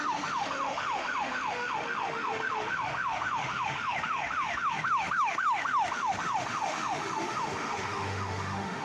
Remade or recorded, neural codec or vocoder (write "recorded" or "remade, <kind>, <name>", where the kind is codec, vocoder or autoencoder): remade, autoencoder, DAC-VAE